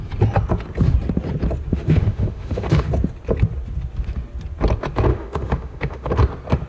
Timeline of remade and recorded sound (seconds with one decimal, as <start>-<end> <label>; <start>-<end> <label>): 0.0-1.7 recorded; 1.7-2.9 remade; 2.9-5.1 recorded; 5.1-6.1 remade; 6.1-6.7 recorded